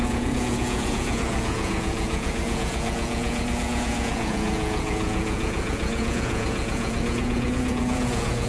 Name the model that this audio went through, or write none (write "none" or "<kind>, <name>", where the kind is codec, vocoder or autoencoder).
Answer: vocoder, Vocos